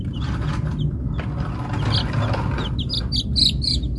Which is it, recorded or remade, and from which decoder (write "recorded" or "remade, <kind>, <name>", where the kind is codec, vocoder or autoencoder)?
recorded